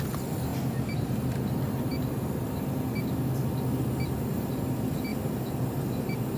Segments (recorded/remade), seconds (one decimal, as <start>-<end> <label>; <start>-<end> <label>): 0.0-6.4 recorded